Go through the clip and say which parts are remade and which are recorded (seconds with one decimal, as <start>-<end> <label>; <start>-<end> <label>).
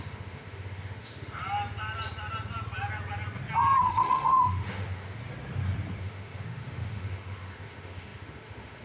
0.0-1.4 remade; 1.4-3.8 recorded; 3.8-5.2 remade; 5.2-6.0 recorded; 6.0-8.8 remade